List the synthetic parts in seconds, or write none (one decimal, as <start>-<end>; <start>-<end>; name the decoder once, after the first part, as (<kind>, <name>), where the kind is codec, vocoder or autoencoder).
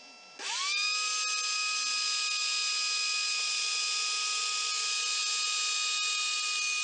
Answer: none